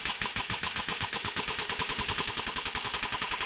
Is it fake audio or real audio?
fake